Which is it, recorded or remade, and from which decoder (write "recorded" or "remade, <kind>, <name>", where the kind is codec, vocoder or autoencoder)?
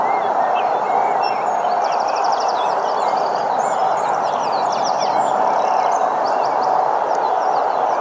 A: recorded